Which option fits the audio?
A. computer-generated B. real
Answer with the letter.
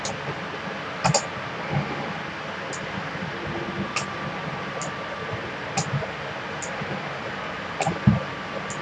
B